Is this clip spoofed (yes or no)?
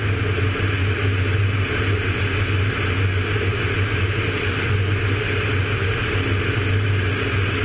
no